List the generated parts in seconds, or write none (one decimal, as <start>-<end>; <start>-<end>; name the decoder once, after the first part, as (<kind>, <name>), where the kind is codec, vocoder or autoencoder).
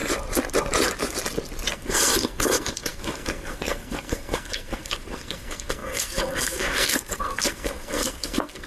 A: 1.7-8.7 (codec, SNAC)